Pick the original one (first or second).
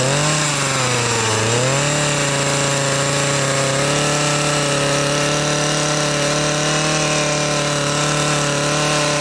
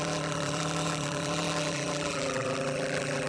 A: first